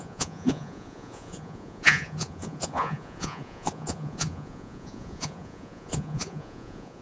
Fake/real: fake